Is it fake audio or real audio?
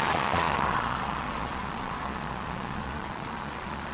fake